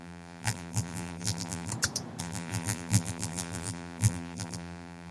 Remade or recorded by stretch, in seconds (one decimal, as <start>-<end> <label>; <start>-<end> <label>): 0.0-1.7 remade; 1.7-2.2 recorded; 2.2-5.1 remade